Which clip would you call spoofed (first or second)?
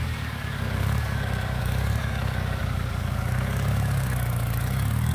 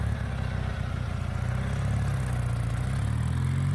first